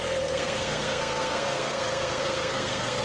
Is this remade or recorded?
remade